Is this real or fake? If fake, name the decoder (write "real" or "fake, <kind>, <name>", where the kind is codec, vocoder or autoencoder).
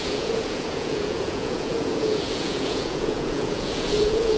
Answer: fake, vocoder, Vocos